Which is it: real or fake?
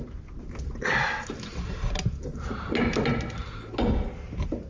real